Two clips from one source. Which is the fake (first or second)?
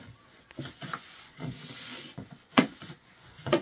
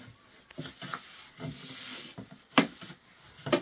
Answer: first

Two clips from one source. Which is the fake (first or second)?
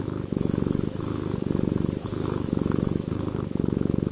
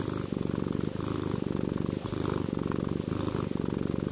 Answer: first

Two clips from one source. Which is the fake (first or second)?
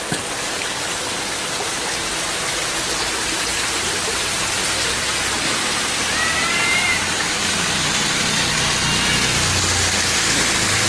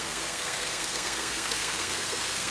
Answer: second